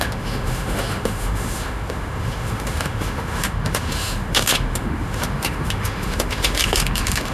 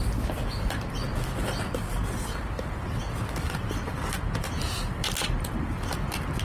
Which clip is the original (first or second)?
second